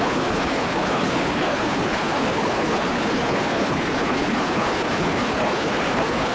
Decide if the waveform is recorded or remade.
remade